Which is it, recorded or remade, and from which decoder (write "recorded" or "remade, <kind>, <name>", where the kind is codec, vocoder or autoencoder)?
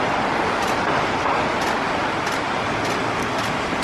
recorded